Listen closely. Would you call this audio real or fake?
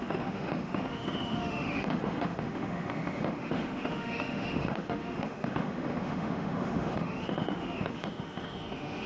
fake